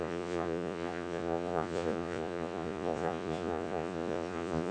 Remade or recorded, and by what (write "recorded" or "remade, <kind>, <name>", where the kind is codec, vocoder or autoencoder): remade, vocoder, Vocos